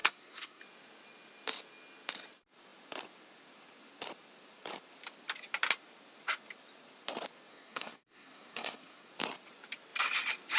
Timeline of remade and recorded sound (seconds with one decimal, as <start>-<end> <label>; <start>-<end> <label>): 0.0-0.6 remade; 0.6-7.5 recorded; 7.5-9.1 remade; 9.1-10.6 recorded